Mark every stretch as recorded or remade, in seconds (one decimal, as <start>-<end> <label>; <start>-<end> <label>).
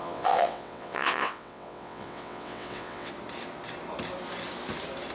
0.0-3.1 remade; 3.1-5.1 recorded